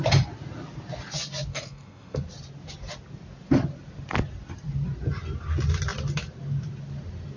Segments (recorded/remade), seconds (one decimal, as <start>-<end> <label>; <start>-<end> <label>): 0.0-1.5 recorded; 1.5-2.2 remade; 2.2-7.4 recorded